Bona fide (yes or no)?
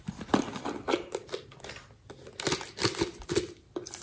yes